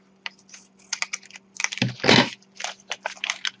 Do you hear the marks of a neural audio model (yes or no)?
no